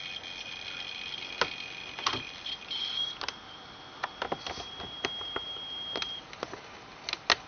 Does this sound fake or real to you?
real